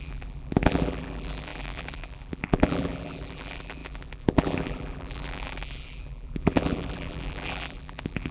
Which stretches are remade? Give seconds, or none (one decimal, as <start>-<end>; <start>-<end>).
0.0-8.3